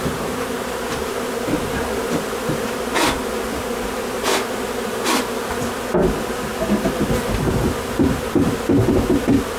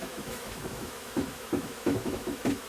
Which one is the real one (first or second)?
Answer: first